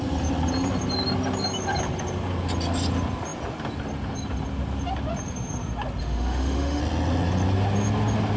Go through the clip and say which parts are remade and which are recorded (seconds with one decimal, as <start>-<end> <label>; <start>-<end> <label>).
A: 0.0-6.0 recorded; 6.0-6.8 remade; 6.8-8.4 recorded